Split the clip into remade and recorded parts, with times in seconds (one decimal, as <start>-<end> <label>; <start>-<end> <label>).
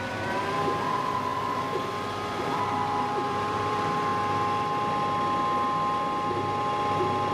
0.0-1.3 remade; 1.3-2.4 recorded; 2.4-4.1 remade; 4.1-7.3 recorded